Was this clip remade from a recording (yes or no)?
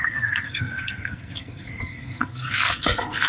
yes